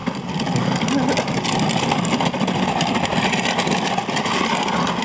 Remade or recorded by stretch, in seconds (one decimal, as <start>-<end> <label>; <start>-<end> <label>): 0.0-5.0 recorded